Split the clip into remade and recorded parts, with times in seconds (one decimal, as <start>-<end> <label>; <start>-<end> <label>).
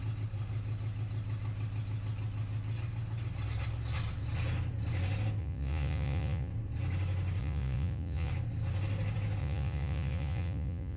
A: 0.0-5.4 recorded; 5.4-6.5 remade; 6.5-7.4 recorded; 7.4-8.3 remade; 8.3-9.4 recorded; 9.4-11.0 remade